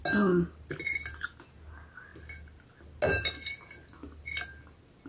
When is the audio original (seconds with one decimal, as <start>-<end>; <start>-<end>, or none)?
0.0-5.1